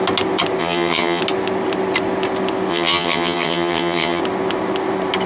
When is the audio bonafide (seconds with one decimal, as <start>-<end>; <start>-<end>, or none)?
0.0-0.6; 1.2-2.7; 4.2-5.3